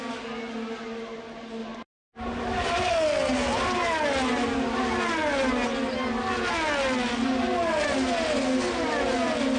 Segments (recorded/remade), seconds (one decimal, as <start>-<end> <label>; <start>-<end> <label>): 0.0-1.6 recorded; 1.6-2.9 remade; 2.9-9.6 recorded